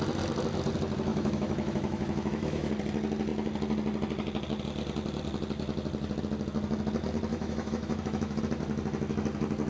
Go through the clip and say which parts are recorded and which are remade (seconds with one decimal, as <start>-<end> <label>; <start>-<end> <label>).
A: 0.0-1.1 recorded; 1.1-2.7 remade; 2.7-7.3 recorded; 7.3-8.4 remade; 8.4-9.7 recorded